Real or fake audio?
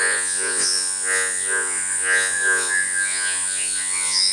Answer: fake